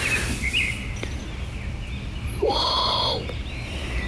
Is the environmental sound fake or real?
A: real